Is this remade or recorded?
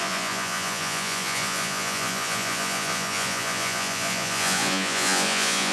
remade